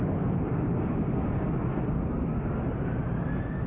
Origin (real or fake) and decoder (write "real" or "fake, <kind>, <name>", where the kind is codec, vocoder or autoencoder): real